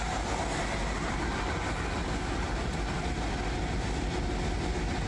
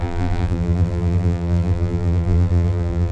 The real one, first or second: first